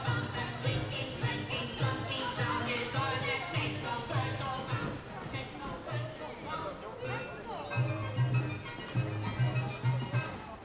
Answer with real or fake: real